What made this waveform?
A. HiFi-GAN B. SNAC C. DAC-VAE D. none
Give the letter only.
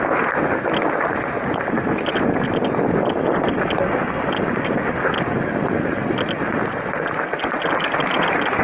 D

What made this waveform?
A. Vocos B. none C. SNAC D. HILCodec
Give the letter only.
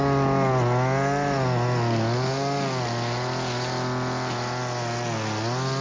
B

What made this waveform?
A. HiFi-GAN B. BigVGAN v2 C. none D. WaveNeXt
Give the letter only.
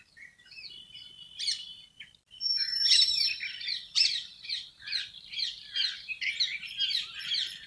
B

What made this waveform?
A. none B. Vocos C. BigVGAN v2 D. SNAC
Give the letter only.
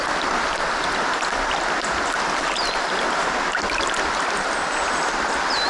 A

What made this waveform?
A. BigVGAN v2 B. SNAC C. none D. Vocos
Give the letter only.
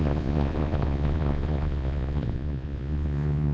D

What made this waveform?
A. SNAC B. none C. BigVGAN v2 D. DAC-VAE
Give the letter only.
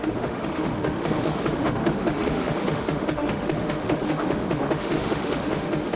D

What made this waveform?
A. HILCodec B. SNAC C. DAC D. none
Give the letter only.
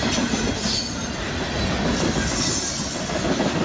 D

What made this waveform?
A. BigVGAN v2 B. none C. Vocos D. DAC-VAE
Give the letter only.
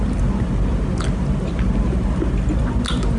B